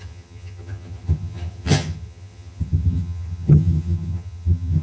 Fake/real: fake